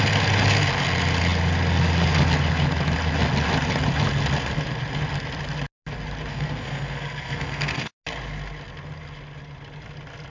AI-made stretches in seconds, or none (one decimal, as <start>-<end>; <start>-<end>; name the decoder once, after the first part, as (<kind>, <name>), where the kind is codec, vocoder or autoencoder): 6.3-7.9 (codec, SNAC)